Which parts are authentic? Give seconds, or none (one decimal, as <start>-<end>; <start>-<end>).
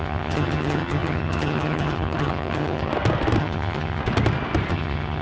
2.9-3.4; 4.0-4.7